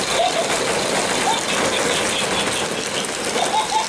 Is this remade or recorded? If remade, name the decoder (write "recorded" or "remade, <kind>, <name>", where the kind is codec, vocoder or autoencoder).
recorded